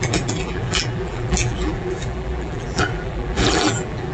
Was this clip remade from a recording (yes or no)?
yes